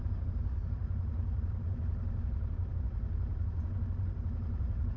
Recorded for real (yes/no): no